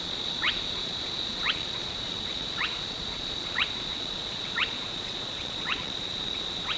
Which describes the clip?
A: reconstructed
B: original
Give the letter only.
A